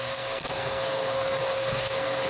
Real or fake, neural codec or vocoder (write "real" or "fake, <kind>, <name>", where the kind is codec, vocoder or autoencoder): fake, codec, SNAC